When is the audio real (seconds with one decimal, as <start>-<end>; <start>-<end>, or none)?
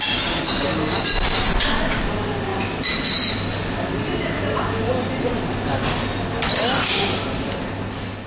0.0-8.3